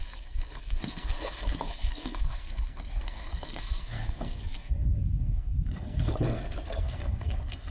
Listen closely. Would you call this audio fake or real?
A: fake